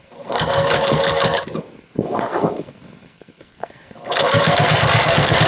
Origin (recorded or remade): remade